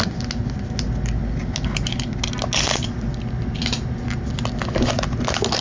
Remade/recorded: recorded